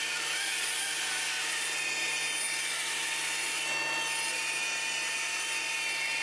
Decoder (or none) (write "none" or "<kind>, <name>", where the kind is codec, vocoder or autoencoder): none